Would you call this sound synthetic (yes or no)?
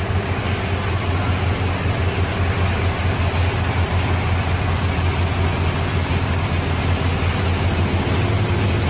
no